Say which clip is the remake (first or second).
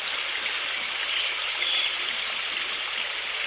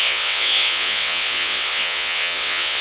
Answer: second